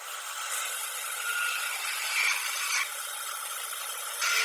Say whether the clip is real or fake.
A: real